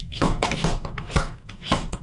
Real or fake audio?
fake